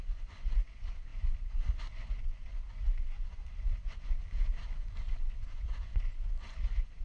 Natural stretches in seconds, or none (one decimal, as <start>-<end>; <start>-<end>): 4.2-5.0